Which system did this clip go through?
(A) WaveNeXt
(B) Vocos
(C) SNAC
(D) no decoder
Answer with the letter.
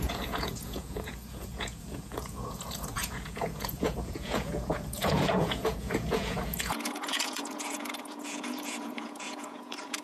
B